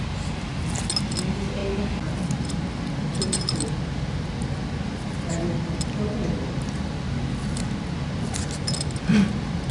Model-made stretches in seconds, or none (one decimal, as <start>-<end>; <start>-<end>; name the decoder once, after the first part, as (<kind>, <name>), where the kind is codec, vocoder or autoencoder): none

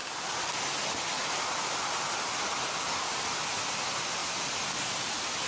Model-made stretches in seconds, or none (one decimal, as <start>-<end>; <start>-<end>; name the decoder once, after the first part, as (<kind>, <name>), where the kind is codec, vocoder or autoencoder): none

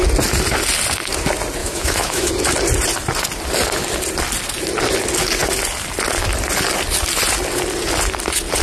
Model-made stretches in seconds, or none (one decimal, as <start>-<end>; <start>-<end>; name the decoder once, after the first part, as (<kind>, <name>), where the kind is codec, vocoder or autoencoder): 1.6-2.3 (autoencoder, DAC-VAE)

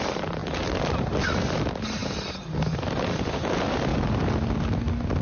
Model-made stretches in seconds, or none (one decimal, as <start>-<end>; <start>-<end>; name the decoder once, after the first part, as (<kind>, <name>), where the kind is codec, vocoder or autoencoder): 0.0-2.0 (vocoder, BigVGAN v2); 2.8-3.9

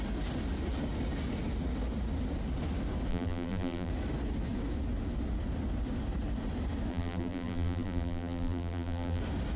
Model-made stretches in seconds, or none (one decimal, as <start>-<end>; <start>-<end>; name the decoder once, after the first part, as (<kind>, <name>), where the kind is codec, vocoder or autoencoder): 3.1-3.9 (vocoder, BigVGAN v2); 6.9-9.2